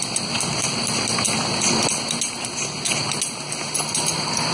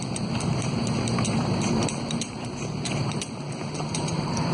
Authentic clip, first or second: first